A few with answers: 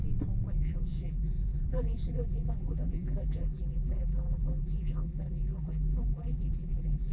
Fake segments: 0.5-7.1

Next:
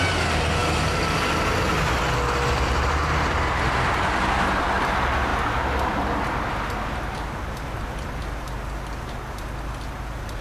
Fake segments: none

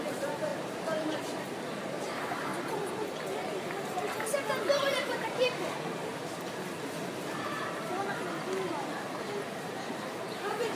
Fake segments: 0.0-2.5; 4.6-6.1; 9.0-10.8

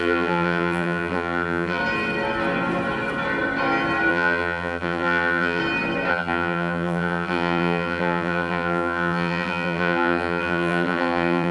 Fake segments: 0.0-1.8; 4.1-5.6; 6.1-11.5

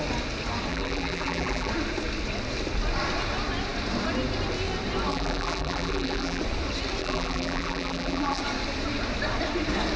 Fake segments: 0.7-1.7; 5.1-6.4; 7.0-8.4

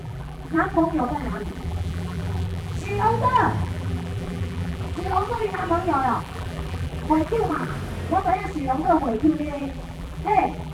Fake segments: 0.0-2.9; 3.6-5.6; 6.2-7.7; 8.2-10.7

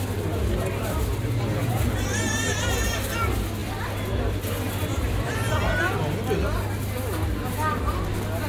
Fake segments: 3.6-5.6